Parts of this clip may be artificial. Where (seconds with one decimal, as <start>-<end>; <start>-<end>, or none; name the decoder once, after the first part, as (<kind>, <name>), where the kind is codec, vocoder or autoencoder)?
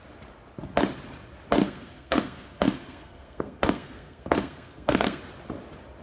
1.6-5.2 (codec, SNAC)